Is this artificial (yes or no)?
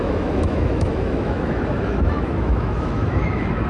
yes